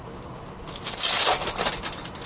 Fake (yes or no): no